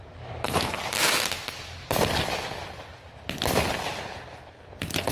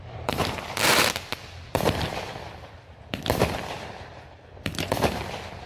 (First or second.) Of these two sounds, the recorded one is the first